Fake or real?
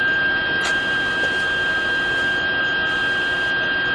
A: real